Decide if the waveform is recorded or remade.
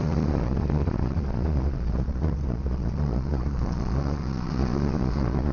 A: remade